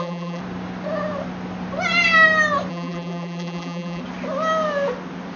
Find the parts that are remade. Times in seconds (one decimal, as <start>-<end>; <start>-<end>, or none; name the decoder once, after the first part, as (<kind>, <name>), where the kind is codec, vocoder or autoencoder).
0.0-0.4 (vocoder, BigVGAN v2); 2.7-4.0